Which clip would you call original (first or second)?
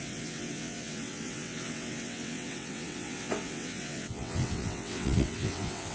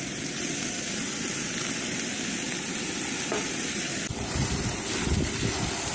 second